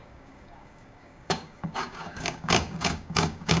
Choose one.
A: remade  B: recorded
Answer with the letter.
A